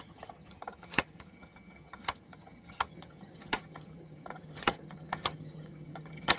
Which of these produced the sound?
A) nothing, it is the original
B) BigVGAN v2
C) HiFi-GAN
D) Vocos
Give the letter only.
C